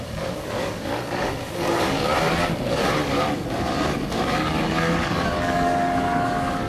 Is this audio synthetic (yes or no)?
yes